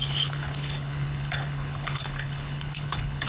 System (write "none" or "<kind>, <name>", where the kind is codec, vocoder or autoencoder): codec, HILCodec